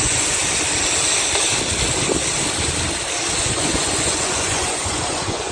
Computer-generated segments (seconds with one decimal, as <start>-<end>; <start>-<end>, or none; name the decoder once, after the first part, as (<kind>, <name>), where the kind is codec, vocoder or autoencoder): 0.0-0.4 (vocoder, Vocos); 3.4-5.5